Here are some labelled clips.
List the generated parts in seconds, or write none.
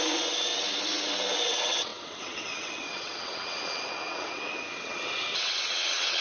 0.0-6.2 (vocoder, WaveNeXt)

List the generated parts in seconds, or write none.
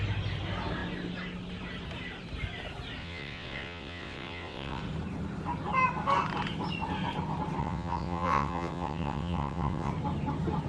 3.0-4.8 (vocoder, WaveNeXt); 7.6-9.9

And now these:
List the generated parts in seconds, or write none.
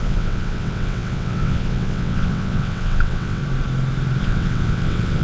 0.0-3.4 (vocoder, WaveNeXt); 4.2-5.2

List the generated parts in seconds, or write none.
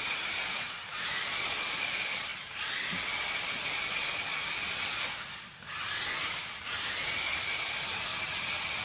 none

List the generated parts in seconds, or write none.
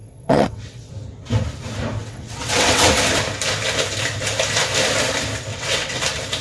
0.0-0.9 (vocoder, WaveNeXt); 2.0-2.9; 5.5-6.0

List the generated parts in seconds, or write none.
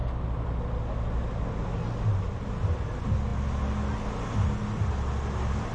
none